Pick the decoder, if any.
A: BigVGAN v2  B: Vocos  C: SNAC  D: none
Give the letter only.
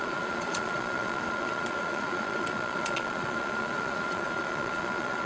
B